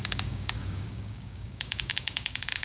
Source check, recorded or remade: remade